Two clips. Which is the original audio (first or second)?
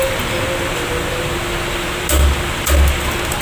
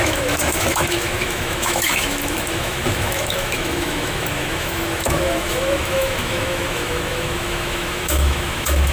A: first